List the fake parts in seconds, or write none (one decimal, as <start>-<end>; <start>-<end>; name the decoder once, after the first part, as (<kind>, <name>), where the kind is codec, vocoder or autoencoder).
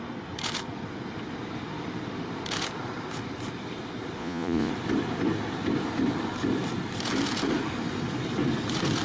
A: 4.2-4.7 (vocoder, Vocos)